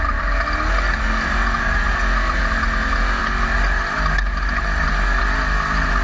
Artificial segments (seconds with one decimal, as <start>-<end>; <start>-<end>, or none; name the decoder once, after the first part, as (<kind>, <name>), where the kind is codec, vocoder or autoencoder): none